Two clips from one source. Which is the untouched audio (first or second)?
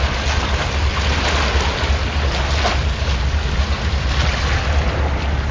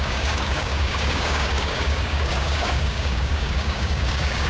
first